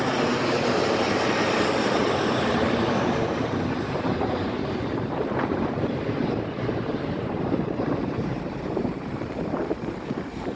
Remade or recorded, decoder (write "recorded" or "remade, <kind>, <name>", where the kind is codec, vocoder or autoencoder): remade, vocoder, BigVGAN v2